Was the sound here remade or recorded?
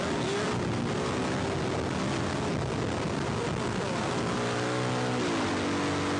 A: recorded